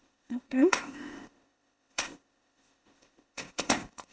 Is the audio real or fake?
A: fake